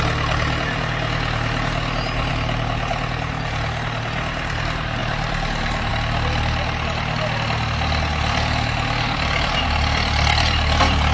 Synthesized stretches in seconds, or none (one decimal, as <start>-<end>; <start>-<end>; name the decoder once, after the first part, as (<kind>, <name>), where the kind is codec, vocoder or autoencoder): 5.0-5.9 (vocoder, BigVGAN v2)